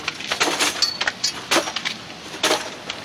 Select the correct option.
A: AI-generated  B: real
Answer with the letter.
B